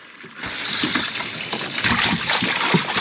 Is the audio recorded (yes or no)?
yes